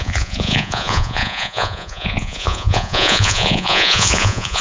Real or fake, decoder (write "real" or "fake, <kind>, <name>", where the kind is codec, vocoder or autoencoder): fake, vocoder, Vocos